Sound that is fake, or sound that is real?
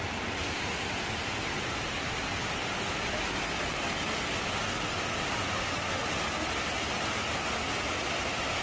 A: real